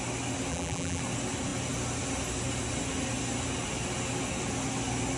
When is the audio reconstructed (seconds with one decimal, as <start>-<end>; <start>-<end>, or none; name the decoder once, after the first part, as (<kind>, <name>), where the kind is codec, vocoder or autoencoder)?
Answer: 0.5-1.0 (vocoder, BigVGAN v2)